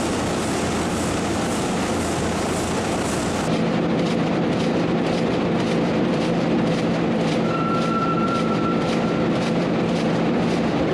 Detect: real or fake fake